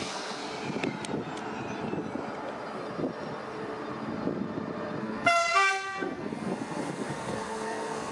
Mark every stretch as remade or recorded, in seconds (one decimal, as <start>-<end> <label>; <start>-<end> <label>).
0.0-0.4 remade; 0.4-5.0 recorded; 5.0-8.1 remade